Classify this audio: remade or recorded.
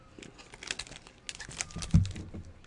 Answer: recorded